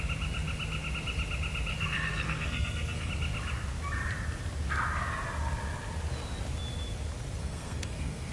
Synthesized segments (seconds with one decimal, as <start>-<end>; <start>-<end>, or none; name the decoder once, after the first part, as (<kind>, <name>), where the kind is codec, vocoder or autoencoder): 1.7-3.1 (codec, SNAC); 7.4-8.3